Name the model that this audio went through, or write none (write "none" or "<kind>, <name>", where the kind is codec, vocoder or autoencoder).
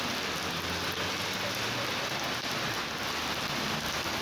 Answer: none